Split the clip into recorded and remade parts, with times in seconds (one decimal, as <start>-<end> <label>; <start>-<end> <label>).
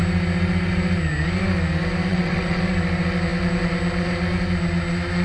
0.0-2.1 recorded; 2.1-2.6 remade; 2.6-5.2 recorded